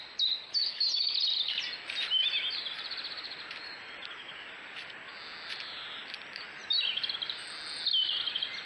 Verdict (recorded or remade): recorded